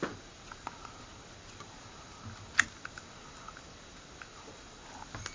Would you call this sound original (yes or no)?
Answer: yes